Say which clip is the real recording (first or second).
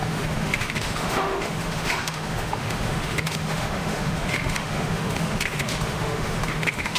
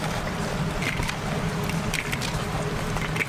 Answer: second